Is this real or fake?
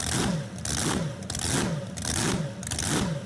real